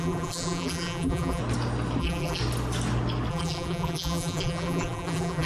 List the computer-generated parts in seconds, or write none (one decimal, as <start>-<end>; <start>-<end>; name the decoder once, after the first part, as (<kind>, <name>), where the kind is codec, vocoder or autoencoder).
0.0-1.4 (vocoder, BigVGAN v2); 2.0-2.4; 3.3-5.5